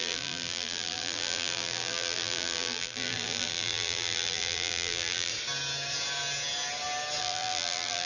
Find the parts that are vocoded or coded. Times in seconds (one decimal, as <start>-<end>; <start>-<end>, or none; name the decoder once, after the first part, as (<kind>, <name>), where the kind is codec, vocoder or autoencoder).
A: 0.0-5.3 (vocoder, BigVGAN v2); 7.2-8.1